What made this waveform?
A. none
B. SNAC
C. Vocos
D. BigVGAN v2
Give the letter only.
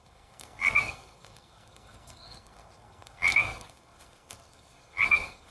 B